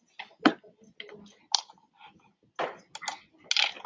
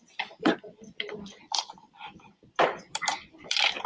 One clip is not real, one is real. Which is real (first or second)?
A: first